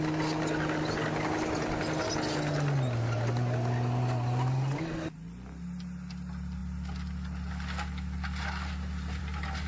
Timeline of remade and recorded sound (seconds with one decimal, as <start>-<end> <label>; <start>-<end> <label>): 0.0-9.7 recorded